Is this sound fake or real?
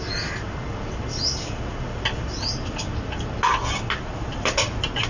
real